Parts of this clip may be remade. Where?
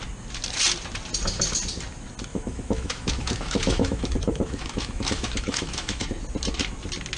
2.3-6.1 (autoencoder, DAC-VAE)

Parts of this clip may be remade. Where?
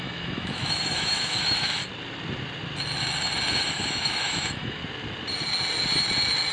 0.0-1.8 (autoencoder, DAC-VAE); 3.5-4.8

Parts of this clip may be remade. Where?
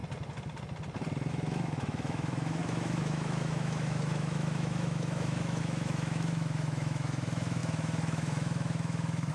1.3-9.3 (autoencoder, DAC-VAE)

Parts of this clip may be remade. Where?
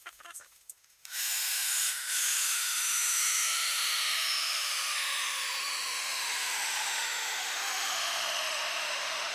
0.0-9.3 (autoencoder, DAC-VAE)